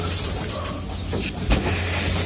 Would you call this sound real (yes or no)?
yes